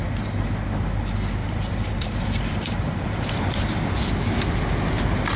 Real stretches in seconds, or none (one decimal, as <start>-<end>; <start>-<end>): 0.0-1.4; 4.6-5.4

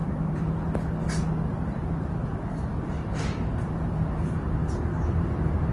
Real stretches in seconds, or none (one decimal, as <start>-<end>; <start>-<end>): 0.5-2.2

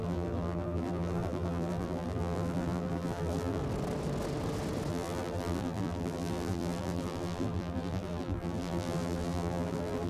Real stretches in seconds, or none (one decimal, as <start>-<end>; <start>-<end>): 3.6-4.9